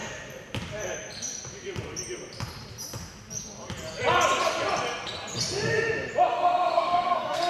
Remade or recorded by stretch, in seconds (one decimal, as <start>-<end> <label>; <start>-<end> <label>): 0.0-6.3 recorded; 6.3-7.5 remade